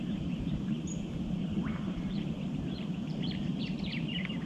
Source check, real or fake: fake